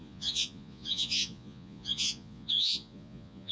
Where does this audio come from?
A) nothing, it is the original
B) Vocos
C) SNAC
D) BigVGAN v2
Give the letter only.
B